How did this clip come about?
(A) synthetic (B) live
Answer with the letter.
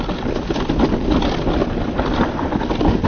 B